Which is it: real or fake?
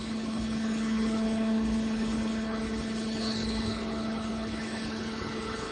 fake